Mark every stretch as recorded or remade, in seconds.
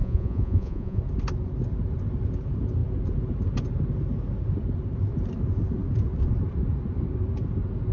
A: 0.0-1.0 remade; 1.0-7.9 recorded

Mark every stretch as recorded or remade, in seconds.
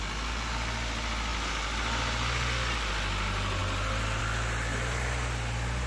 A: 0.0-5.9 recorded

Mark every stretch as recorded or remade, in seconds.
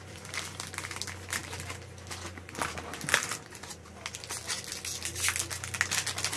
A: 0.0-6.4 recorded